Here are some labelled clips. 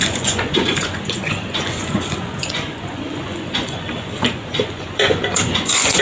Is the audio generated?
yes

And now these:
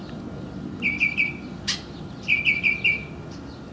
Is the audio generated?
no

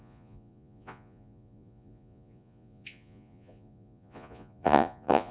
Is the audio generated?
yes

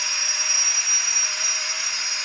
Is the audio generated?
no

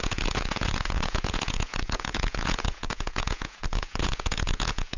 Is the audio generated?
yes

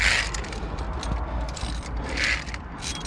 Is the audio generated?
no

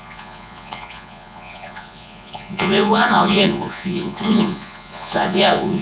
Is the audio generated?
yes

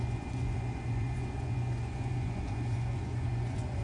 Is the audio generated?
yes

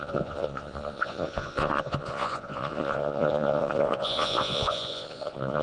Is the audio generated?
yes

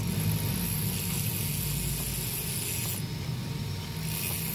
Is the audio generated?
no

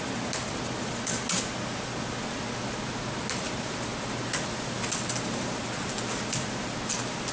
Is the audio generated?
no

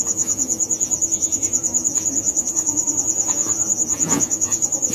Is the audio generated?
yes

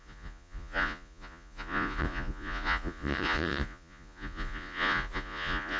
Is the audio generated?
yes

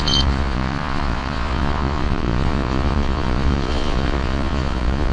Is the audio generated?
yes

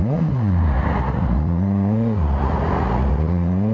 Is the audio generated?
yes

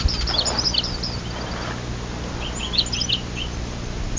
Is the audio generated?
no